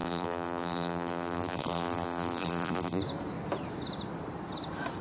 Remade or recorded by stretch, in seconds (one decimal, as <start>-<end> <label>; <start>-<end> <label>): 0.0-3.0 remade; 3.0-5.0 recorded